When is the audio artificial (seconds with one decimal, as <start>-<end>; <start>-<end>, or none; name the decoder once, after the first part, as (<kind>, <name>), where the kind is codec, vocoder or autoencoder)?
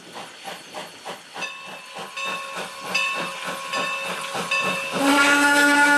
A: 5.1-6.0 (codec, DAC)